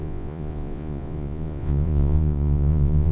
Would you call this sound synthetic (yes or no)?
yes